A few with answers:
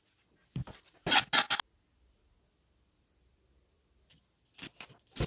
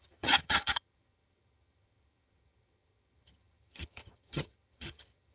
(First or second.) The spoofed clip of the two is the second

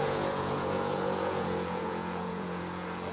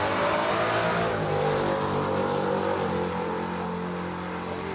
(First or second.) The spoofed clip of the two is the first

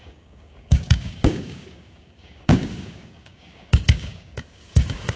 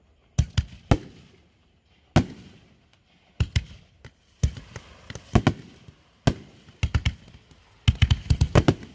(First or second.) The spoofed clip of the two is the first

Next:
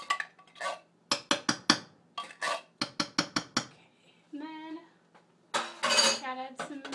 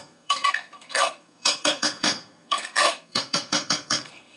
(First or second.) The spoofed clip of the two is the second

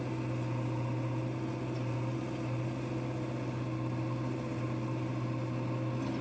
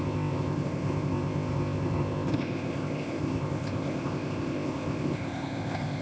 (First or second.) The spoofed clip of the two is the second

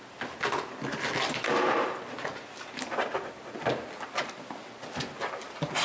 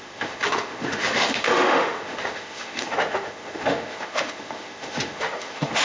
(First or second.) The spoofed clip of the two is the second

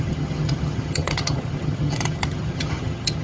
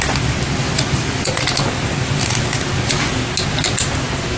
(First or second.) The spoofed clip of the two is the first